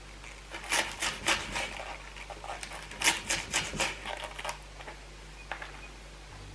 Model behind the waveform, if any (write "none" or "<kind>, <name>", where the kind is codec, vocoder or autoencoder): none